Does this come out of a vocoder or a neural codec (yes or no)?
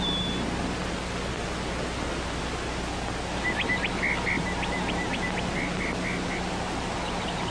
no